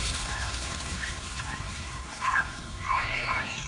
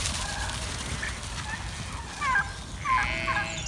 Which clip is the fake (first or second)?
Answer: first